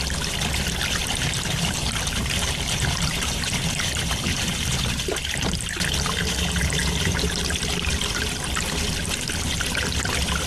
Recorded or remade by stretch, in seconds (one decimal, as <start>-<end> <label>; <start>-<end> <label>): 0.0-1.0 recorded; 1.0-4.9 remade; 4.9-10.5 recorded